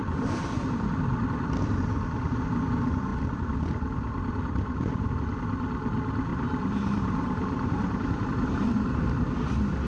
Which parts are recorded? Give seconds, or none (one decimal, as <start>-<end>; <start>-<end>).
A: 1.1-3.1; 5.1-6.3; 9.0-9.9